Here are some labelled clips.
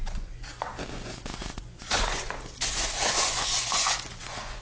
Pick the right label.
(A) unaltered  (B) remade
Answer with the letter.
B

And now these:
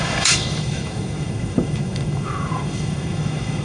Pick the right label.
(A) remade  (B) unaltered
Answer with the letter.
A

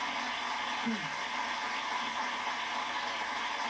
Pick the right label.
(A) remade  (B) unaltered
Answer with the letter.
B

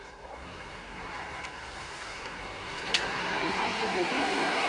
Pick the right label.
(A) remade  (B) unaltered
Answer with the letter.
A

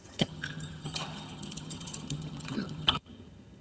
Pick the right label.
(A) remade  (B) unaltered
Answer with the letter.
A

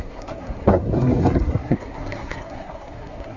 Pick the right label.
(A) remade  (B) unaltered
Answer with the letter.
A